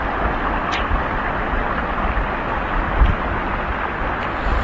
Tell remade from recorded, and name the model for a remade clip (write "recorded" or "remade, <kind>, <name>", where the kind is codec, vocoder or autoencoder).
recorded